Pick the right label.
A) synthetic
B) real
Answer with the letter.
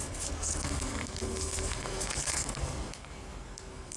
A